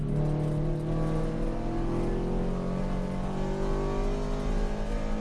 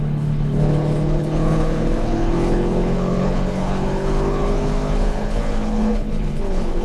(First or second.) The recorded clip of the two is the first